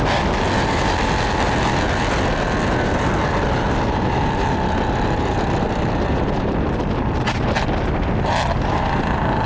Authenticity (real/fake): real